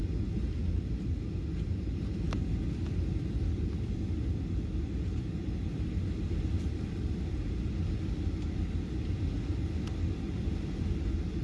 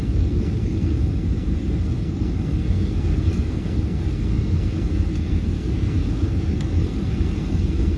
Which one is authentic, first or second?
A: first